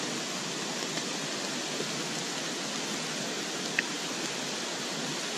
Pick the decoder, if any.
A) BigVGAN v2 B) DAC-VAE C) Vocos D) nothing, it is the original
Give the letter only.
D